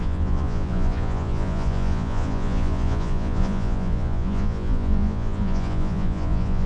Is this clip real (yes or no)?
no